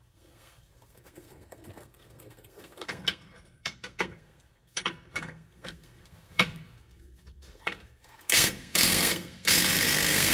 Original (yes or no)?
no